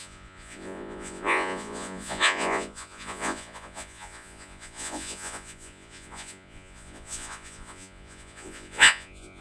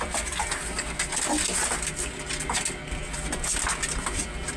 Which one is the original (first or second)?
second